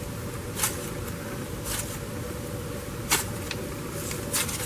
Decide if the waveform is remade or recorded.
recorded